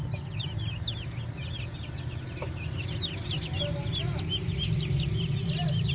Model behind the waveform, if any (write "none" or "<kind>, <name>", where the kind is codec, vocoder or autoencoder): none